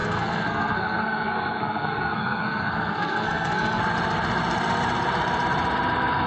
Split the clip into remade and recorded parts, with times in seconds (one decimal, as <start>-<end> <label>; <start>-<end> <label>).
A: 0.0-3.8 remade; 3.8-6.3 recorded